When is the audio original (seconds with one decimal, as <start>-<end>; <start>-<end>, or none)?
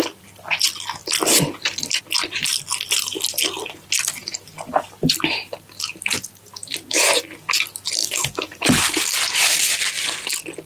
0.0-8.0; 8.8-10.7